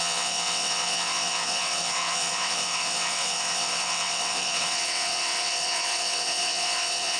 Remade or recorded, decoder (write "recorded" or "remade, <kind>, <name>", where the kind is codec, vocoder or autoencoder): remade, vocoder, WaveNeXt